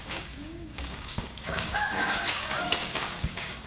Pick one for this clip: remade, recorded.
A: remade